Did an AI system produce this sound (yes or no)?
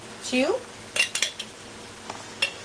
no